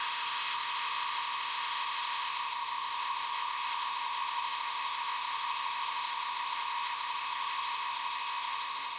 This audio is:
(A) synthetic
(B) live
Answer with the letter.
A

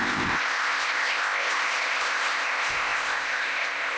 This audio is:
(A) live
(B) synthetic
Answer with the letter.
B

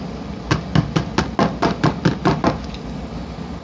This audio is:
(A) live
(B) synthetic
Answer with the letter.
A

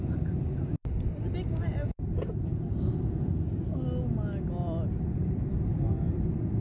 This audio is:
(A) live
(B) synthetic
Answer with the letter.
A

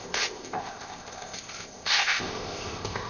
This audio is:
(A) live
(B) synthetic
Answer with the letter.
B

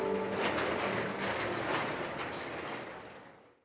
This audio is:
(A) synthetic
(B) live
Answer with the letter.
B